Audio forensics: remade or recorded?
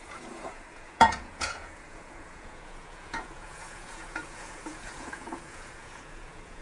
remade